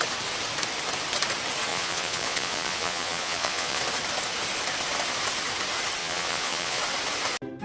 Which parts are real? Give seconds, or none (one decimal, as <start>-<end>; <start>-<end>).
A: 0.0-1.7; 3.8-6.0; 6.8-7.6